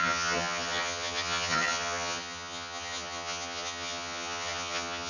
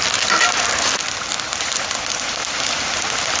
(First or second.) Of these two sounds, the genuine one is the second